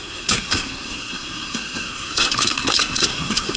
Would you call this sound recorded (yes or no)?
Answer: no